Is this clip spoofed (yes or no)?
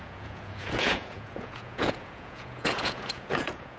yes